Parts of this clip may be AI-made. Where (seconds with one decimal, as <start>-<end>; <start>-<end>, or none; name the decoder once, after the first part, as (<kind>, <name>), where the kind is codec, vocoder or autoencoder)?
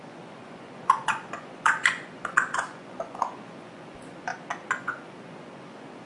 0.0-4.3 (vocoder, Vocos); 4.8-6.1